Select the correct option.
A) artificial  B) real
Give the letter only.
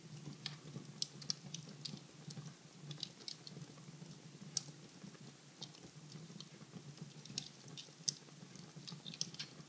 B